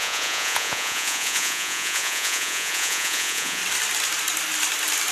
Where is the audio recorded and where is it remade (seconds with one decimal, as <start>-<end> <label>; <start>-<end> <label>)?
0.0-3.6 remade; 3.6-5.1 recorded